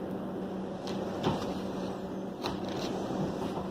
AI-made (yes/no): yes